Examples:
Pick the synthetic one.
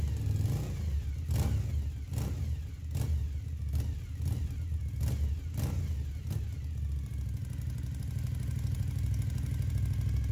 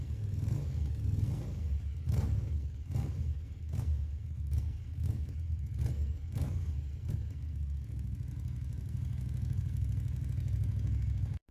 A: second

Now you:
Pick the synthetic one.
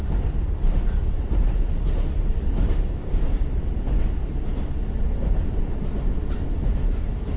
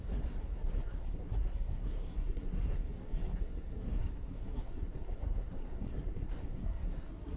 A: second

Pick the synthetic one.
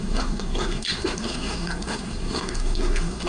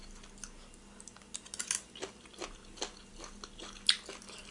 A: first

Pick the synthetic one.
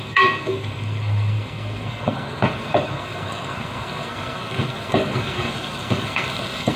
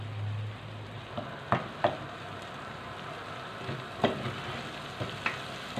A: first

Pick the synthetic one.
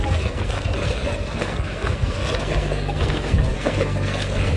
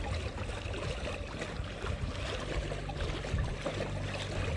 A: first